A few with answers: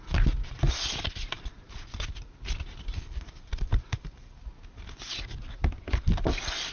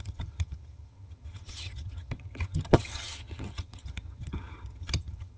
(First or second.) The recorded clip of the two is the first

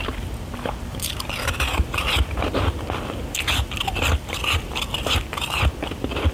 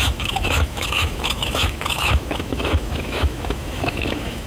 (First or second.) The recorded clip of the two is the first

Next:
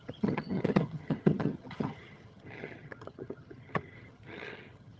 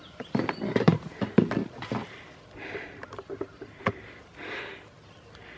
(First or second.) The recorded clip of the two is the second